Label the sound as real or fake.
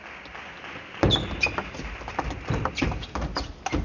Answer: real